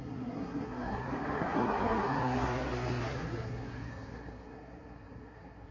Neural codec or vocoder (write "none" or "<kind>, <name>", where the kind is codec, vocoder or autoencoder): codec, SNAC